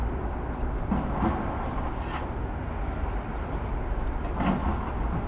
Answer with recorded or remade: recorded